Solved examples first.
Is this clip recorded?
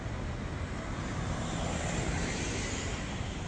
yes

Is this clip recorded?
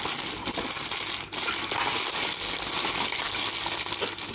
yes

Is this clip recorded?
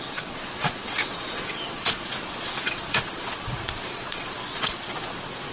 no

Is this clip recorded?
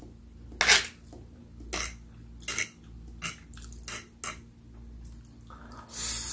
yes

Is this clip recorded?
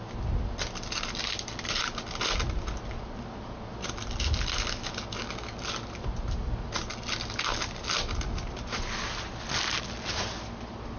yes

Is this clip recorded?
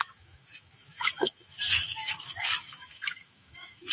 no